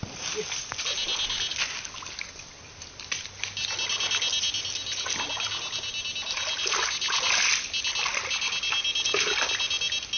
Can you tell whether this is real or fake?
real